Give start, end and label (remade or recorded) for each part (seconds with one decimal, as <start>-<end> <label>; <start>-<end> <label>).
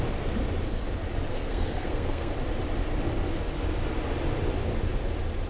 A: 0.0-1.3 recorded; 1.3-2.3 remade; 2.3-5.5 recorded